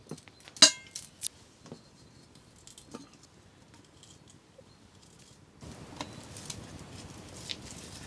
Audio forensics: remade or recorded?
recorded